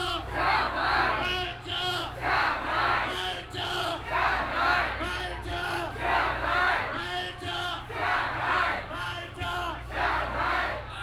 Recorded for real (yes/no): no